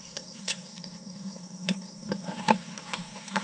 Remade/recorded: remade